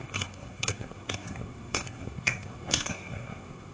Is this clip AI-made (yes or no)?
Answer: yes